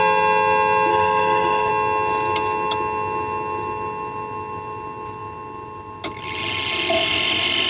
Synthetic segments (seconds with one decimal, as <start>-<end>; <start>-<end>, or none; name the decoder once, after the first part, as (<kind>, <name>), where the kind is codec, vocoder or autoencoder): 0.9-1.7 (codec, DAC)